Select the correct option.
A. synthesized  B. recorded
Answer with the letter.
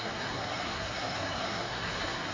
A